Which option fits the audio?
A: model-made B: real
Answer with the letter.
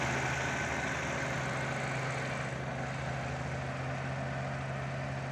B